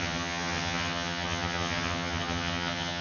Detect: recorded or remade remade